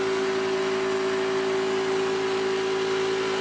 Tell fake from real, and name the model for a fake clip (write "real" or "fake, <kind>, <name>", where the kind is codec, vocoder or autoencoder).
real